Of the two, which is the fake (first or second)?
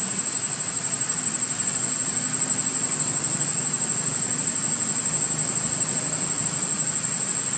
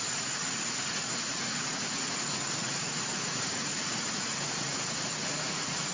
second